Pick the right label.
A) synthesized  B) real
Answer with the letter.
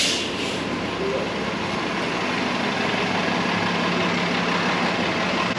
B